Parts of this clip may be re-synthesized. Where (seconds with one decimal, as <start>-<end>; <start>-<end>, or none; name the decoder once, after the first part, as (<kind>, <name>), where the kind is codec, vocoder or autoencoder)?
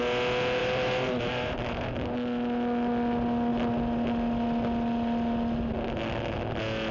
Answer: 0.6-1.9 (vocoder, BigVGAN v2)